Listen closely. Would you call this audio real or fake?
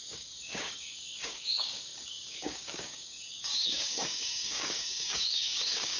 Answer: fake